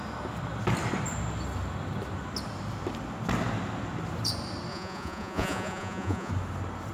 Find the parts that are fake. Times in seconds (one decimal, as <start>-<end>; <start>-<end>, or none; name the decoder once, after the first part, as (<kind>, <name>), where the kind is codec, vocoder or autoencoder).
4.7-6.3 (vocoder, Vocos)